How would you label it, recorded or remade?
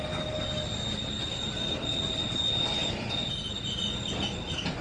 recorded